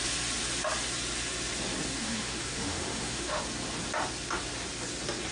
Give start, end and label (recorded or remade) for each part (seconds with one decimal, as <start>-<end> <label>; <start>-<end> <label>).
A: 0.0-2.0 recorded; 2.0-3.4 remade; 3.4-5.3 recorded